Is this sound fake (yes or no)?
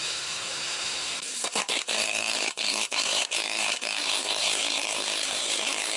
yes